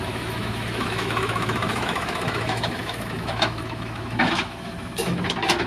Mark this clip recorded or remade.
remade